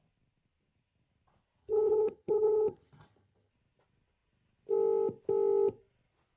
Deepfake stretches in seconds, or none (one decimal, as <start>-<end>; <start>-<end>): 1.6-3.5